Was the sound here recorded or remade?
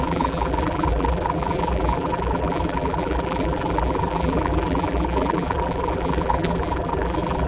remade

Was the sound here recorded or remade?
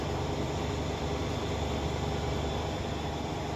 recorded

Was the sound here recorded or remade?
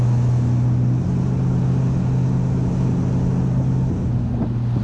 recorded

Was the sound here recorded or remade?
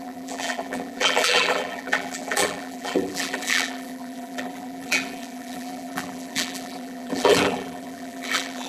remade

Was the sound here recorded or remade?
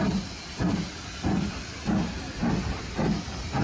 remade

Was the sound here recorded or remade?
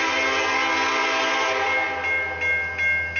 recorded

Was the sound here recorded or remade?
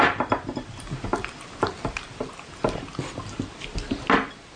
recorded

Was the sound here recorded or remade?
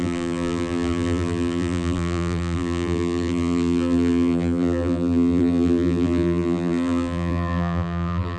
remade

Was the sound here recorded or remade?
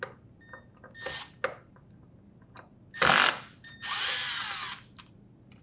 recorded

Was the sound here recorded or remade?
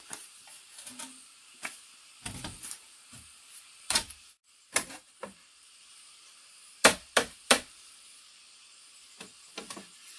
remade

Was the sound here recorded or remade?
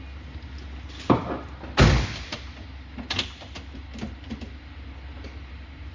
recorded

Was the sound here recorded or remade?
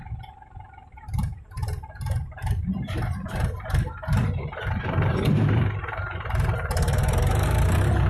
remade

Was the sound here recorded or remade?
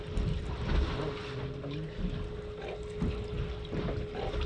recorded